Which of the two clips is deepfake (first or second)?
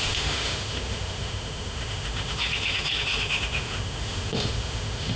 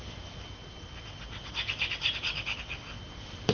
first